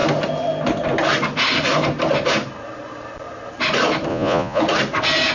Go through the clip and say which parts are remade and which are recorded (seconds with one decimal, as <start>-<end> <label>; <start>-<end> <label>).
0.0-4.1 recorded; 4.1-4.6 remade; 4.6-5.3 recorded